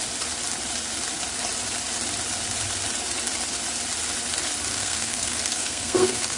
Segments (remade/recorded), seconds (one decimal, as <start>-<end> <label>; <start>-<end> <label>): 0.0-4.7 recorded; 4.7-6.4 remade